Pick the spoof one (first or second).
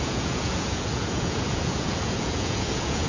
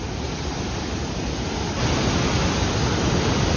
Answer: first